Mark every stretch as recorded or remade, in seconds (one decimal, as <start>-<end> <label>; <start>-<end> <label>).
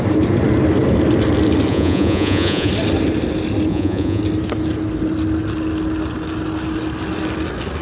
0.0-1.7 recorded; 1.7-2.7 remade; 2.7-3.7 recorded; 3.7-4.2 remade; 4.2-7.8 recorded